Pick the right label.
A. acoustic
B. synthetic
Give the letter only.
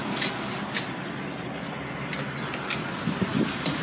A